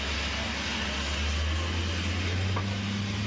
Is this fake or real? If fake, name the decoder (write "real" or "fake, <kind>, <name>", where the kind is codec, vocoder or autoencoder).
real